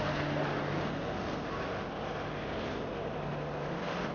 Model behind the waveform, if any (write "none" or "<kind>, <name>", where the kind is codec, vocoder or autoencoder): none